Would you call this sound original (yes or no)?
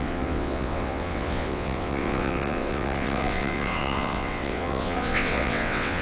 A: no